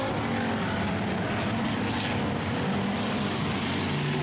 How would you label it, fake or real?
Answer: real